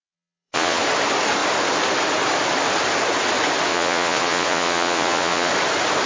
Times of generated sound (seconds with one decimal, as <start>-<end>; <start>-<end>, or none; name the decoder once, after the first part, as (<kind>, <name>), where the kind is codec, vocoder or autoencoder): 0.0-0.8 (vocoder, Vocos); 3.7-5.5